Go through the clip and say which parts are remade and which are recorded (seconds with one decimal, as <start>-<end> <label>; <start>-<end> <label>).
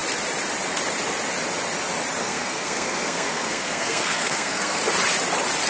0.0-2.2 recorded; 2.2-4.8 remade; 4.8-5.7 recorded